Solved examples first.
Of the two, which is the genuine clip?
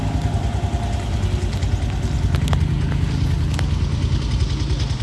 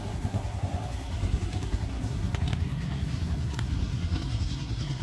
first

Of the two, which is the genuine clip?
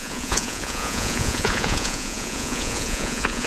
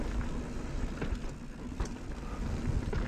second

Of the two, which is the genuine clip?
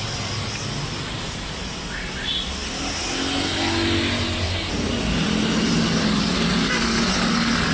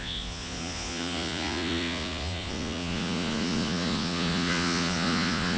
first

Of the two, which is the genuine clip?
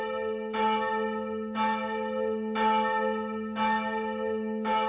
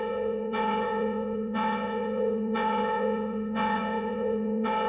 first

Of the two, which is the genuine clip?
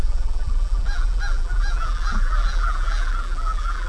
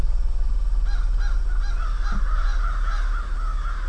second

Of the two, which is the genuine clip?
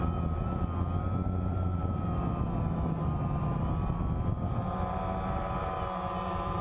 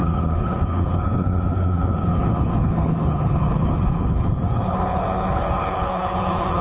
first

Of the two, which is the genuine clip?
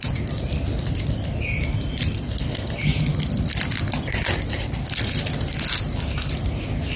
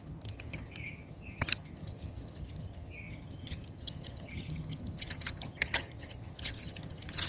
first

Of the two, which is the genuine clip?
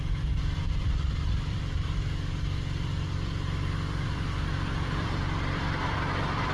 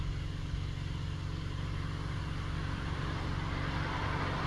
second